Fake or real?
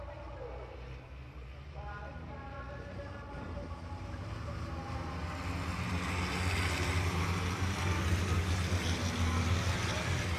real